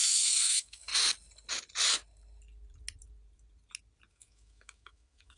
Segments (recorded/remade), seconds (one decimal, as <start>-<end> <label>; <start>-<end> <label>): 0.0-0.9 remade; 0.9-4.1 recorded; 4.1-5.4 remade